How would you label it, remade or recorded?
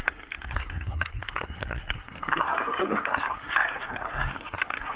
remade